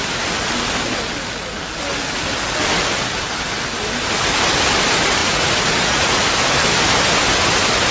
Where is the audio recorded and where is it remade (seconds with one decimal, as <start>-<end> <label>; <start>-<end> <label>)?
0.0-5.2 recorded; 5.2-6.2 remade; 6.2-7.9 recorded